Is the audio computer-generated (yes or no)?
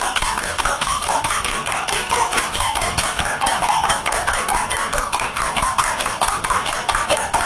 yes